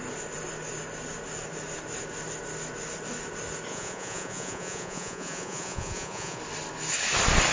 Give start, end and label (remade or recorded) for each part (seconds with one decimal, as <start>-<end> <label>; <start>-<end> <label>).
0.0-3.7 recorded; 3.7-6.4 remade; 6.4-7.5 recorded